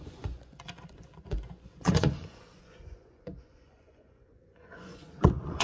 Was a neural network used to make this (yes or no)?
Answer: yes